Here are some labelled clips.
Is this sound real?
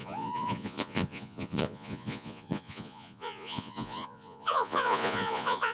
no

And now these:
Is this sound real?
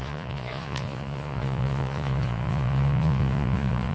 no